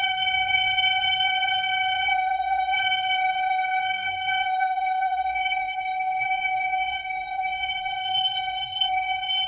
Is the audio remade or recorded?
remade